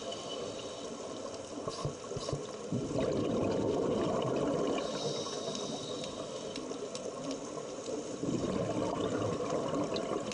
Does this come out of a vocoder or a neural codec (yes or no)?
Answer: no